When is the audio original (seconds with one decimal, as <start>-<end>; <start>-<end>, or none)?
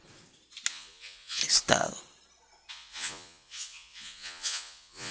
0.0-0.7; 1.4-2.7